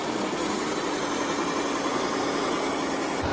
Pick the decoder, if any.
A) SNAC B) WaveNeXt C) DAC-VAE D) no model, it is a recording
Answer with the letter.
D